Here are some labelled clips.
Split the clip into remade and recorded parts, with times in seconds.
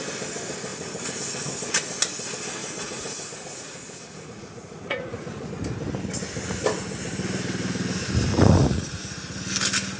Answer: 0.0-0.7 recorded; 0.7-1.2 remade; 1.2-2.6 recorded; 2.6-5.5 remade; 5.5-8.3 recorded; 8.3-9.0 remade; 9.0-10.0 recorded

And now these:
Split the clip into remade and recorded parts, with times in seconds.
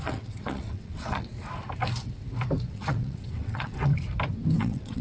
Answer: 0.0-1.3 remade; 1.3-2.7 recorded; 2.7-3.9 remade; 3.9-4.6 recorded; 4.6-5.0 remade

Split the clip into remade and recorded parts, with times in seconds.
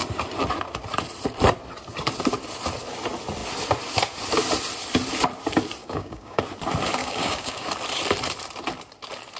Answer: 0.0-5.8 recorded; 5.8-6.4 remade; 6.4-7.0 recorded; 7.0-7.7 remade; 7.7-9.4 recorded